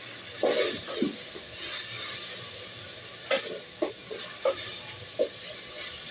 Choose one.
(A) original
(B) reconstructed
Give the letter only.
A